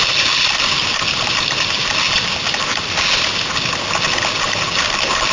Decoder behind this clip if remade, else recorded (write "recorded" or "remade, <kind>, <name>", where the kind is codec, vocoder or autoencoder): recorded